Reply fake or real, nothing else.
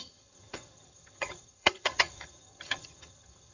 fake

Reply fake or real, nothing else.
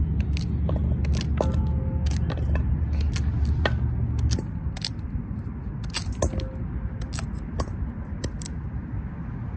real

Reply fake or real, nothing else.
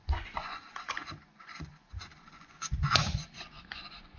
fake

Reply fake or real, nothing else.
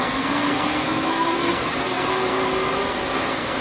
fake